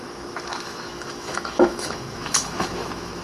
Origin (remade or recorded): remade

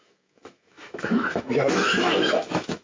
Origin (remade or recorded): remade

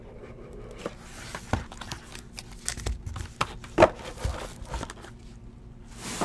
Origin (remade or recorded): recorded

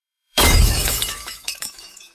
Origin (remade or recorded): remade